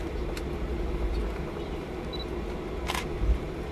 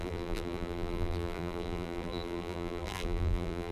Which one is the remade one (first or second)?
second